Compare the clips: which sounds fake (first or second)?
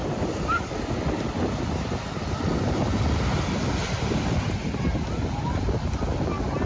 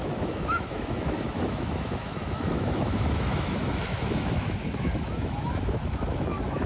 second